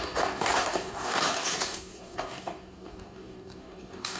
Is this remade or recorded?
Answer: remade